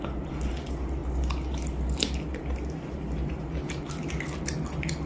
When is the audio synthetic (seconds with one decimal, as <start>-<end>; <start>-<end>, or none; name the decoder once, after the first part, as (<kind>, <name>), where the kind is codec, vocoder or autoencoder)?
none